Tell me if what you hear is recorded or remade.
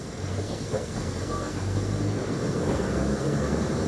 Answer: remade